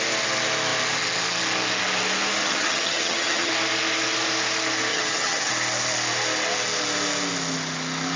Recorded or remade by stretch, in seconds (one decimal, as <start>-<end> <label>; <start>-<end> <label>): 0.0-2.4 recorded; 2.4-3.5 remade; 3.5-4.9 recorded; 4.9-5.5 remade; 5.5-8.2 recorded